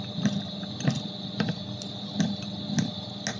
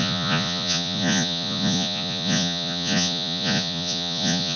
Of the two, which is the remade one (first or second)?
second